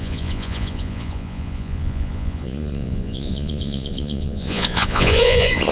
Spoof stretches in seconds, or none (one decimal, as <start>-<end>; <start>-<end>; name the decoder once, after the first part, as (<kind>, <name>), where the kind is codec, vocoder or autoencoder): 0.0-5.7 (vocoder, Vocos)